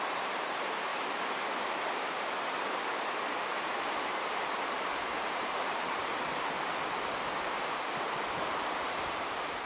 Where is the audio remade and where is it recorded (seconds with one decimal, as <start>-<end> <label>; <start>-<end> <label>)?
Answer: 0.0-0.9 remade; 0.9-1.6 recorded; 1.6-2.9 remade; 2.9-3.5 recorded; 3.5-6.1 remade; 6.1-8.4 recorded; 8.4-9.7 remade